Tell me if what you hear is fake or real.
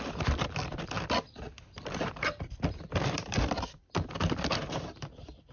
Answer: fake